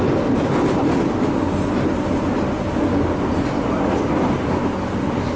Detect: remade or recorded recorded